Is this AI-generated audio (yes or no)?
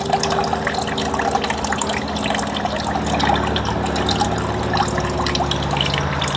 no